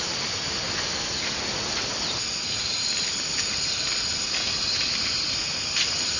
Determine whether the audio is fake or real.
real